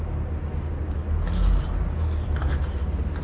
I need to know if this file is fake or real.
real